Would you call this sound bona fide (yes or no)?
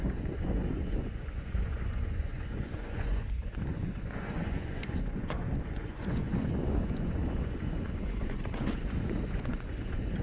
no